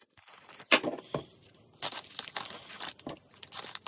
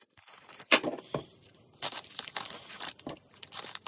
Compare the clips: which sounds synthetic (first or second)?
second